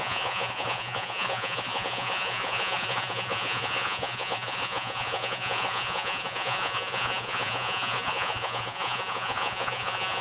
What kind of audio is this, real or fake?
fake